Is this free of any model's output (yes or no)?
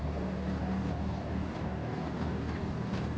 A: no